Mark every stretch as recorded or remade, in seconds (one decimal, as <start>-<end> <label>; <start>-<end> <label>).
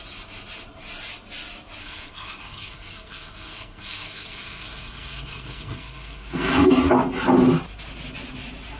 0.0-1.8 recorded; 1.8-6.7 remade; 6.7-8.8 recorded